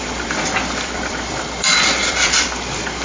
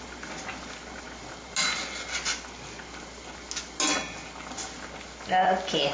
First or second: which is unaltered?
second